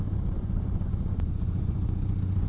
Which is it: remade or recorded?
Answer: remade